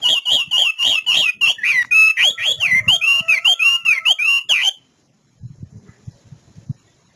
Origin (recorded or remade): recorded